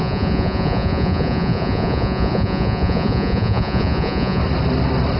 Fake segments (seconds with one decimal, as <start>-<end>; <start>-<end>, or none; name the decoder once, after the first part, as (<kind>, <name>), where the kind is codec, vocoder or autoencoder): 0.0-4.4 (vocoder, Vocos)